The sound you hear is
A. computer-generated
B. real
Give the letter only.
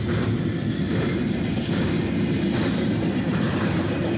B